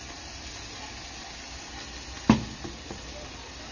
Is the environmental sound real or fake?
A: real